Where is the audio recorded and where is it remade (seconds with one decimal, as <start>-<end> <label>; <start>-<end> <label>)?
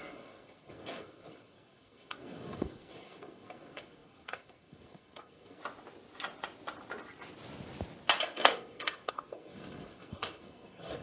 0.0-5.6 remade; 5.6-8.2 recorded; 8.2-11.0 remade